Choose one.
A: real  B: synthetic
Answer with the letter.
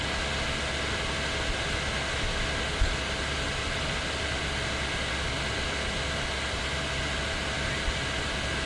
A